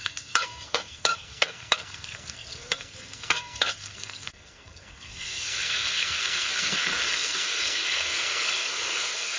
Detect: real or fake fake